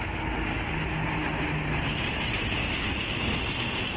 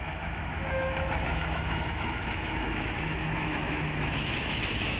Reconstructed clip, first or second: second